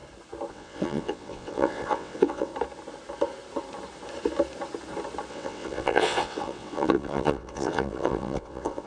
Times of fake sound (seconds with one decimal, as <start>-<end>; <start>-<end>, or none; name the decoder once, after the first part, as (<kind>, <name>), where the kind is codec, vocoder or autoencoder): 0.5-2.5 (vocoder, WaveNeXt); 5.3-8.9